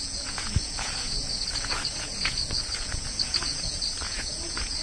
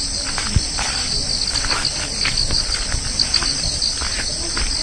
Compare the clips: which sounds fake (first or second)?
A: first